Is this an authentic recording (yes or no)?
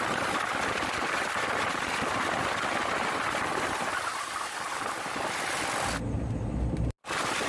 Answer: yes